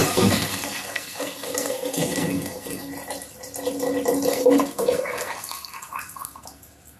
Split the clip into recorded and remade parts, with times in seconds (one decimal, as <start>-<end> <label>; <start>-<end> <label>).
0.0-2.9 remade; 2.9-4.3 recorded; 4.3-7.0 remade

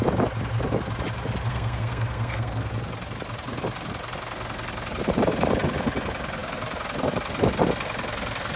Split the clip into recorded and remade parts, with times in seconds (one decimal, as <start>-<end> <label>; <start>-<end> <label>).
0.0-1.5 recorded; 1.5-2.7 remade; 2.7-8.6 recorded

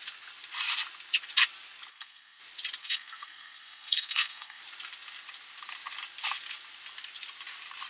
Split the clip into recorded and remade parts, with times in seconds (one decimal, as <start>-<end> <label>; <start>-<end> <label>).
0.0-1.9 recorded; 1.9-2.4 remade; 2.4-2.8 recorded; 2.8-4.6 remade; 4.6-7.9 recorded

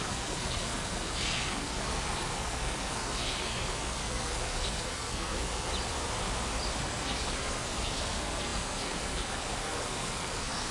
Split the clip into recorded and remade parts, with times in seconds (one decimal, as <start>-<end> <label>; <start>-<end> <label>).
0.0-5.7 remade; 5.7-6.8 recorded; 6.8-10.7 remade

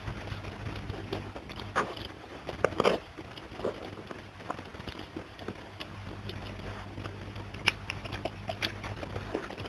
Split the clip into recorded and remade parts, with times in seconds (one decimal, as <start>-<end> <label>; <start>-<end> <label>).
0.0-9.7 recorded